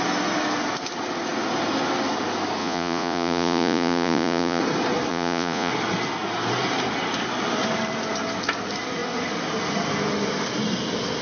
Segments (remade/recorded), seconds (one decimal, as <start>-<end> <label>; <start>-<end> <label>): 0.0-2.6 recorded; 2.6-4.6 remade; 4.6-5.1 recorded; 5.1-5.7 remade; 5.7-11.2 recorded